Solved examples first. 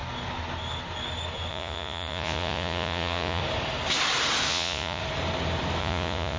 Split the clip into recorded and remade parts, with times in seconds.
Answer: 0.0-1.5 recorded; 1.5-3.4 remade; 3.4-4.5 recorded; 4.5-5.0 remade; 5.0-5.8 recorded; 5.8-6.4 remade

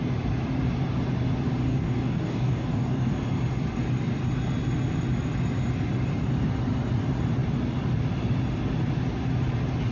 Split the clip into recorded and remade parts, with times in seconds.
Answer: 0.0-1.7 recorded; 1.7-3.1 remade; 3.1-9.9 recorded

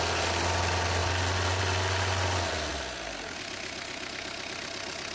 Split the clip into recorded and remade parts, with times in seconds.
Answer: 0.0-5.1 recorded

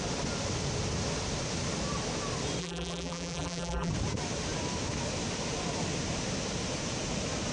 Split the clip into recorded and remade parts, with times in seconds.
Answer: 0.0-2.6 recorded; 2.6-3.9 remade; 3.9-7.5 recorded

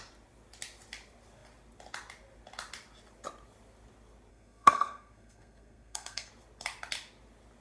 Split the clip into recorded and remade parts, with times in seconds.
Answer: 0.0-4.3 recorded; 4.3-6.3 remade; 6.3-7.6 recorded

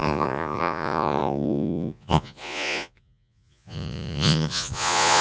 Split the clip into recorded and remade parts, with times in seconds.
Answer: 0.0-5.2 remade